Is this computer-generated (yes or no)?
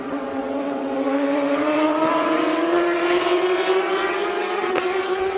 yes